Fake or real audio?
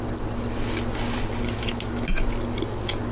real